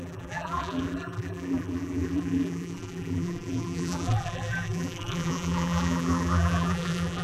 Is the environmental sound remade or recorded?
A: remade